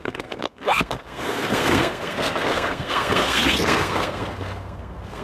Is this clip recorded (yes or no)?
no